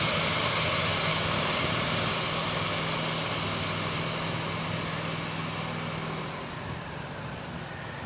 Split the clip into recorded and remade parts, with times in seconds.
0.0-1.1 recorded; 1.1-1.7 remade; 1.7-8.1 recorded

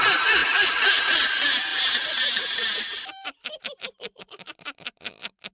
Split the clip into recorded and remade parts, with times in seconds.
0.0-0.4 recorded; 0.4-1.0 remade; 1.0-1.7 recorded; 1.7-4.2 remade; 4.2-5.5 recorded